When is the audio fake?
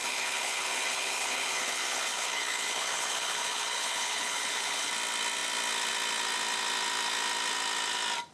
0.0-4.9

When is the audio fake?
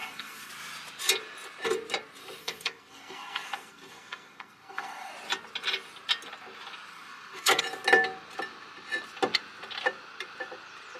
0.0-0.5; 2.4-5.1; 6.9-7.6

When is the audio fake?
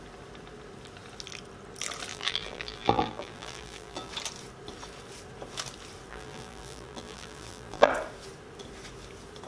2.1-4.1; 6.1-7.9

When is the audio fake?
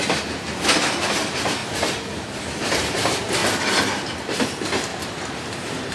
none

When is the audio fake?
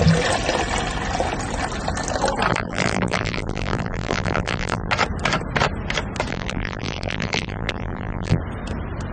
2.5-4.9; 6.3-8.4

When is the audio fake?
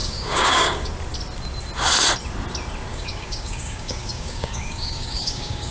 0.0-0.9; 2.9-5.7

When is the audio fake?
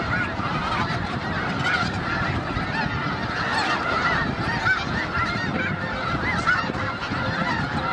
none